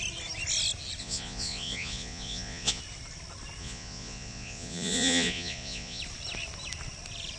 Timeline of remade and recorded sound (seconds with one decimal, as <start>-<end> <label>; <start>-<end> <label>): 0.0-1.0 recorded; 1.0-2.8 remade; 2.8-3.6 recorded; 3.6-6.0 remade; 6.0-7.4 recorded